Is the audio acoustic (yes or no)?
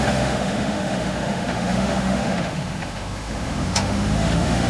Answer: no